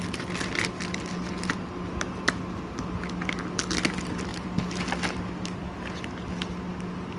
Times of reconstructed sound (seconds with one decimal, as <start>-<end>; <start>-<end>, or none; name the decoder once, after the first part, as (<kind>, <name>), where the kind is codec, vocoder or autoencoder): none